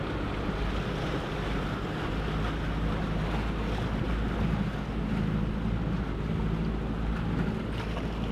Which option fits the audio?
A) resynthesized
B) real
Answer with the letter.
B